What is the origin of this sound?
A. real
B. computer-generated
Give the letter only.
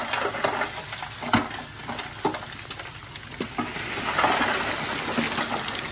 A